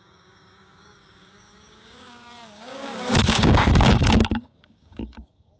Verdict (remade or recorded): remade